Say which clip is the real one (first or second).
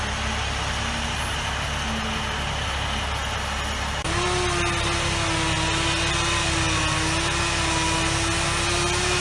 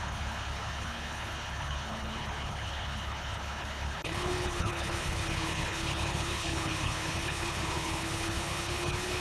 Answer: first